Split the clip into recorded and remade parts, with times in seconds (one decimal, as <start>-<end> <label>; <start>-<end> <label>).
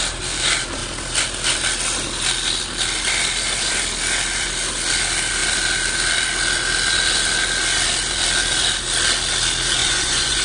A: 0.0-9.8 recorded; 9.8-10.4 remade